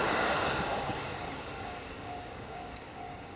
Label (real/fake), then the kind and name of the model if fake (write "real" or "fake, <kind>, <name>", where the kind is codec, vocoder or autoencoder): fake, codec, DAC